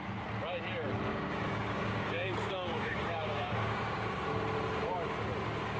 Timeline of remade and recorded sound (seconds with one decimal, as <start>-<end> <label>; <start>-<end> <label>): 0.0-1.1 recorded; 1.1-4.2 remade; 4.2-5.8 recorded